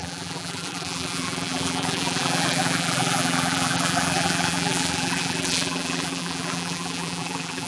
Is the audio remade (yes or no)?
yes